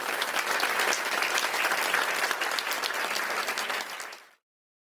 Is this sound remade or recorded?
recorded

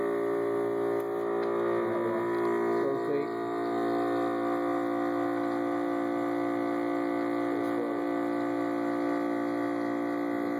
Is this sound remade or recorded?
recorded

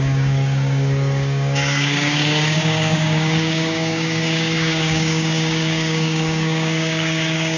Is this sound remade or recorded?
remade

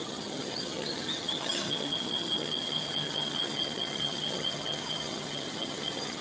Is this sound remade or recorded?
remade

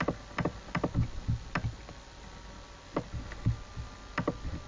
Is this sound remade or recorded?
recorded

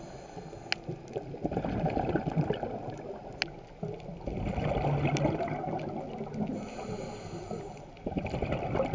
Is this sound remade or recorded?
recorded